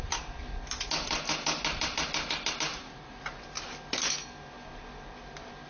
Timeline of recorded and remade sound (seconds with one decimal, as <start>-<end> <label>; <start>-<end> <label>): 0.0-2.7 recorded; 2.7-3.4 remade; 3.4-5.7 recorded

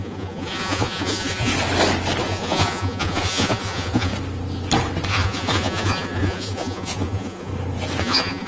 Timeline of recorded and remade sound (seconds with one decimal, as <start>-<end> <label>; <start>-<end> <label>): 0.0-1.5 remade; 1.5-2.2 recorded; 2.2-4.1 remade; 4.1-5.1 recorded; 5.1-7.5 remade; 7.5-8.0 recorded; 8.0-8.5 remade

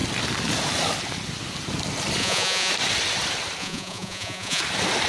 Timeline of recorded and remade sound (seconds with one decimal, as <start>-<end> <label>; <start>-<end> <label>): 0.0-2.2 recorded; 2.2-2.7 remade; 2.7-3.6 recorded; 3.6-4.6 remade; 4.6-5.1 recorded

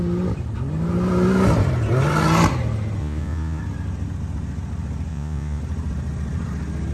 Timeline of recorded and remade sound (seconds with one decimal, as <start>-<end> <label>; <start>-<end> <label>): 0.0-3.0 recorded; 3.0-3.6 remade; 3.6-5.1 recorded; 5.1-5.6 remade; 5.6-6.9 recorded